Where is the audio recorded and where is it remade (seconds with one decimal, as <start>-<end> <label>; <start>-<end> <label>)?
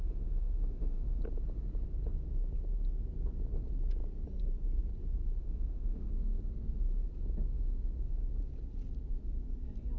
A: 0.0-1.2 remade; 1.2-5.4 recorded; 5.4-6.1 remade; 6.1-10.0 recorded